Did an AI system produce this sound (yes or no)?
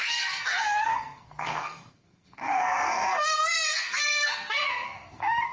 yes